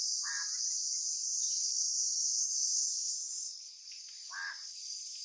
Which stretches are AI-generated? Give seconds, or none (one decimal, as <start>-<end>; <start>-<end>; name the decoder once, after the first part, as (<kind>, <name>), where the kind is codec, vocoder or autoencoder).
none